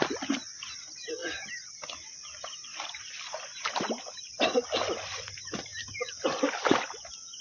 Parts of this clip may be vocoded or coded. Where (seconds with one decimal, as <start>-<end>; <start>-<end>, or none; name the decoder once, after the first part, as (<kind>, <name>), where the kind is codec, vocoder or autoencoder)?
none